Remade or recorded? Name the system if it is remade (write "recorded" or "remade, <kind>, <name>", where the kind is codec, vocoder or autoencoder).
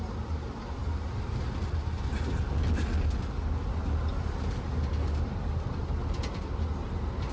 recorded